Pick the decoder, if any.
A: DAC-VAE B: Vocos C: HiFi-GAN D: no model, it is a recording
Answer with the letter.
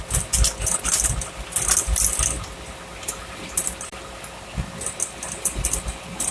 D